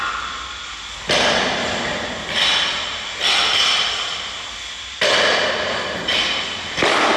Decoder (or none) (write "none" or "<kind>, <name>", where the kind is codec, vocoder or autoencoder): none